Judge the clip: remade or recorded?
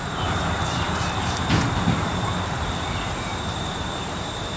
remade